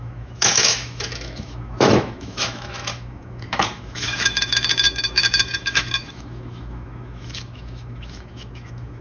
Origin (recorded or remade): remade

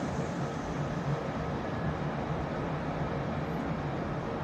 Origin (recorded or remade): recorded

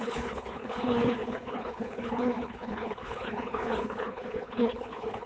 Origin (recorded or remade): remade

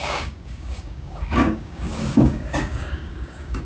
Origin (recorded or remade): remade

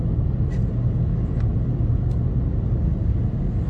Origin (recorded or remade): recorded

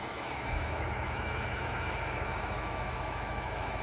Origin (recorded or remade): remade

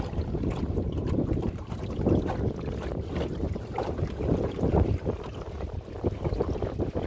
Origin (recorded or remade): recorded